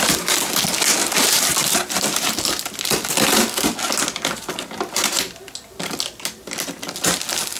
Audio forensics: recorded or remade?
recorded